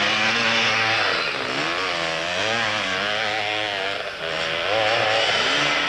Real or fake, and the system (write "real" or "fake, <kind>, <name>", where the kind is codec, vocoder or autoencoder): real